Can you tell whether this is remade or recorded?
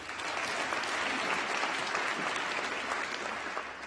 recorded